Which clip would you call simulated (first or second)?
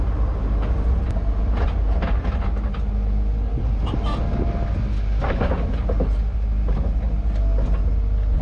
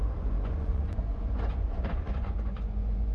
second